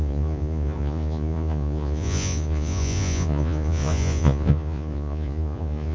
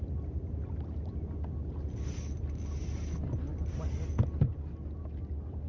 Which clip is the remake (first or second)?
first